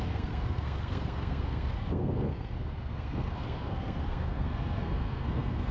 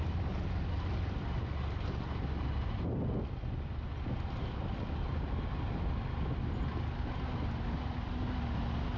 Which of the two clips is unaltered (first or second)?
second